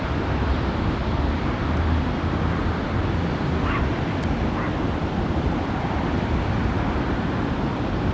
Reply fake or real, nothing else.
fake